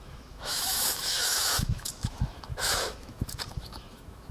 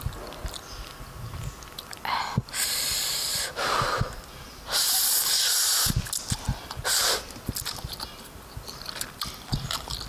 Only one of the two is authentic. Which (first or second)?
second